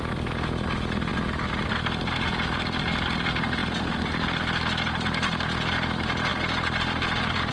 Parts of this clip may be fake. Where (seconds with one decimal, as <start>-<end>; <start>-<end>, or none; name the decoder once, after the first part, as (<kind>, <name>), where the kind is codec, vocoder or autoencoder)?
0.0-1.1 (vocoder, BigVGAN v2); 1.7-7.5